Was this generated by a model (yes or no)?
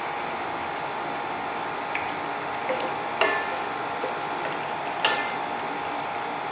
no